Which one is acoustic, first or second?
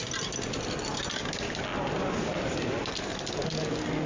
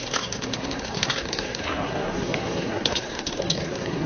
first